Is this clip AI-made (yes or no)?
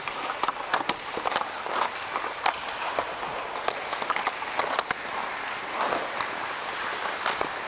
no